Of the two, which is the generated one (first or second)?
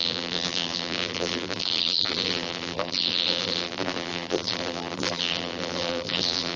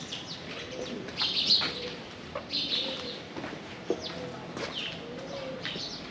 first